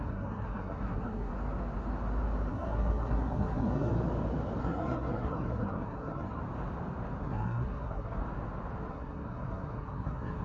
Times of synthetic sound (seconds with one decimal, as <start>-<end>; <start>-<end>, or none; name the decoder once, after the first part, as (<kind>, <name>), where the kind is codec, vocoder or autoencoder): 0.0-1.3 (codec, SNAC); 2.5-3.9; 4.6-6.4; 7.2-8.2; 8.9-10.4